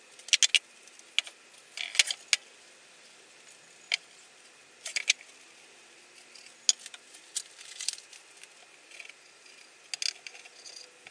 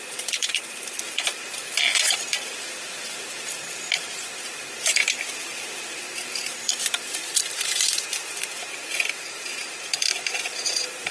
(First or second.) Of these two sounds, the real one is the first